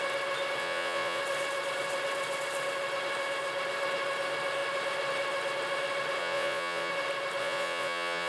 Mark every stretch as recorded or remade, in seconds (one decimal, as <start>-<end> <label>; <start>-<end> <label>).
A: 0.0-0.6 recorded; 0.6-1.2 remade; 1.2-6.2 recorded; 6.2-6.9 remade; 6.9-7.4 recorded; 7.4-8.3 remade